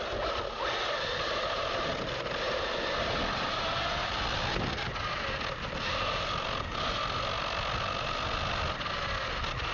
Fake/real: real